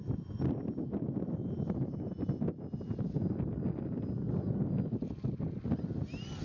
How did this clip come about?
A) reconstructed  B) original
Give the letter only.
B